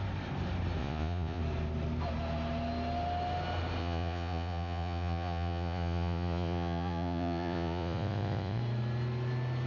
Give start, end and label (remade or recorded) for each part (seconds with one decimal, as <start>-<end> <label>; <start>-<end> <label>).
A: 0.0-0.8 recorded; 0.8-1.4 remade; 1.4-3.8 recorded; 3.8-8.6 remade; 8.6-9.7 recorded